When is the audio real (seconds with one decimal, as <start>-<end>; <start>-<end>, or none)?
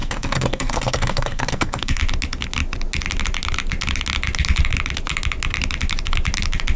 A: 2.0-6.8